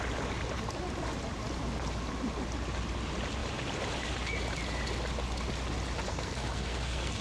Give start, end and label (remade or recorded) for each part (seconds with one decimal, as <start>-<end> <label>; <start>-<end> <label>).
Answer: 0.0-6.1 recorded; 6.1-7.2 remade